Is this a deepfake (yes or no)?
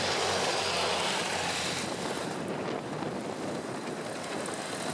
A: no